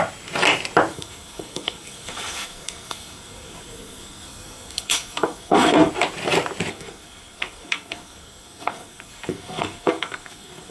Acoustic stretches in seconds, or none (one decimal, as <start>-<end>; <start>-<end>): 0.0-0.9; 5.9-6.7